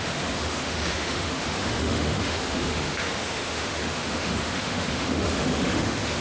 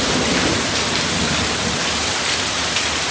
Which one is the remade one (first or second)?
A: first